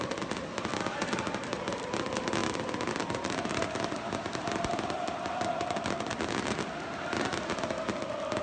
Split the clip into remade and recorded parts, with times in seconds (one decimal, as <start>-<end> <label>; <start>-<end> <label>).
0.0-2.4 recorded; 2.4-6.0 remade; 6.0-8.4 recorded